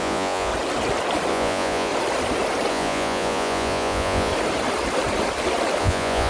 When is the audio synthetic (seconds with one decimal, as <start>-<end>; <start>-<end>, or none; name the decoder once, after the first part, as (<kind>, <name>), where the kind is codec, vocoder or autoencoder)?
0.0-0.5 (vocoder, Vocos); 1.3-1.9; 2.7-4.3; 5.8-6.3